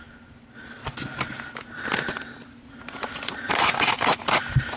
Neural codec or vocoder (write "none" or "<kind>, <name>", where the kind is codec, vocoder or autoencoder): none